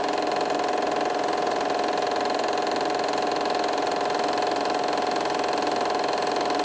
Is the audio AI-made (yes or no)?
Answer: no